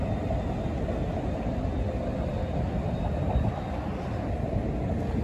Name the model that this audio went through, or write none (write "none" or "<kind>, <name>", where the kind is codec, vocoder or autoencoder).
none